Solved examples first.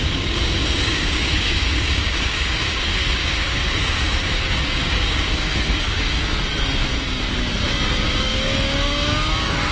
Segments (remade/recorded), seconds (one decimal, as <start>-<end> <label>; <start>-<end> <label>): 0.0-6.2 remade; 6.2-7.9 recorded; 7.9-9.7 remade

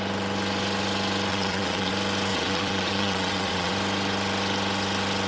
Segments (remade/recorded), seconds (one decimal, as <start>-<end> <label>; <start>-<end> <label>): 0.0-1.3 recorded; 1.3-1.9 remade; 1.9-2.3 recorded; 2.3-3.7 remade; 3.7-5.3 recorded

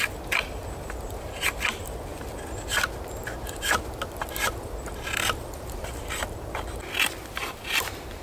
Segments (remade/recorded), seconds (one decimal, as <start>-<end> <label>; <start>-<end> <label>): 0.0-8.2 recorded

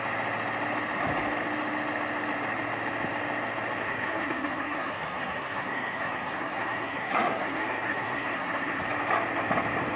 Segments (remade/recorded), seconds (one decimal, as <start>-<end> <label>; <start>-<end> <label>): 0.0-3.8 recorded; 3.8-8.8 remade; 8.8-10.0 recorded

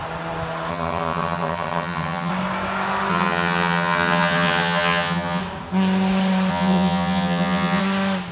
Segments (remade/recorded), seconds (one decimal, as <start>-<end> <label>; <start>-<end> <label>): 0.0-0.7 recorded; 0.7-2.3 remade; 2.3-3.1 recorded; 3.1-5.4 remade; 5.4-6.5 recorded; 6.5-7.8 remade; 7.8-8.3 recorded